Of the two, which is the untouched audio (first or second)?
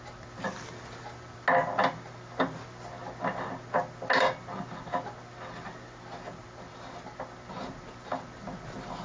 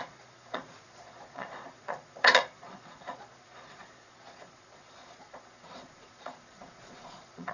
first